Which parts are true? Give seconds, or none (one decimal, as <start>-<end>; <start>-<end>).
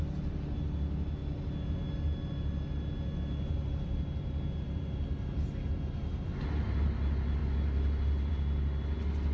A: 0.0-9.3